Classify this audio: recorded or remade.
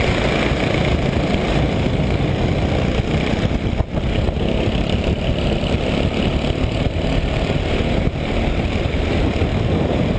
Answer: remade